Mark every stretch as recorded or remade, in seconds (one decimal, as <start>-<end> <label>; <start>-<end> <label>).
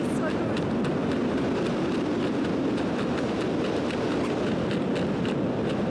0.0-5.9 recorded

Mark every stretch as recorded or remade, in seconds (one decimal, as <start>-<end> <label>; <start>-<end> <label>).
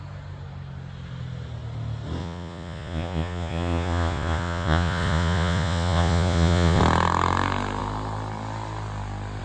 0.0-2.2 recorded; 2.2-6.8 remade; 6.8-9.4 recorded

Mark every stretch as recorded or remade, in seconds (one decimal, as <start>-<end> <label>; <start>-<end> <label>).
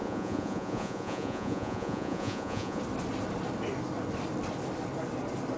0.0-2.8 remade; 2.8-5.6 recorded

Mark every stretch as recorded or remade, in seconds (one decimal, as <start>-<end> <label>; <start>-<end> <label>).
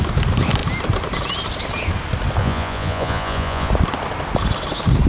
0.0-2.4 recorded; 2.4-3.7 remade; 3.7-5.1 recorded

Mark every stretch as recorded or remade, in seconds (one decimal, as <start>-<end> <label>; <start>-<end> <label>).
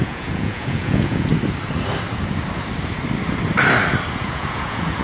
0.0-1.3 remade; 1.3-4.2 recorded; 4.2-5.0 remade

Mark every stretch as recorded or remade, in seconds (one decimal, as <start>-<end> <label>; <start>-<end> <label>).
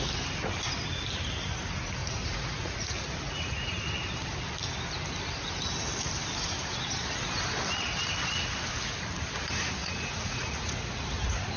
0.0-2.0 recorded; 2.0-3.8 remade; 3.8-9.8 recorded; 9.8-10.7 remade; 10.7-11.6 recorded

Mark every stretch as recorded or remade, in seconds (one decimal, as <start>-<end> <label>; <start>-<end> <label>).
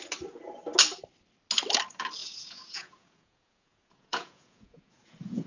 0.0-2.2 recorded; 2.2-5.5 remade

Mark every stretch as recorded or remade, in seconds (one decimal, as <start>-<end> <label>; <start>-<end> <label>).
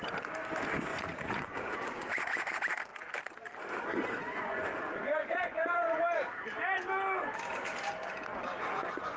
0.0-0.9 recorded; 0.9-2.5 remade; 2.5-4.2 recorded; 4.2-6.0 remade; 6.0-8.3 recorded; 8.3-9.2 remade